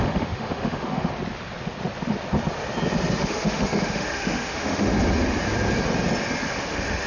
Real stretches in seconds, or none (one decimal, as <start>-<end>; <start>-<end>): 1.1-3.2; 4.9-6.6